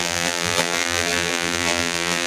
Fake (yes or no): yes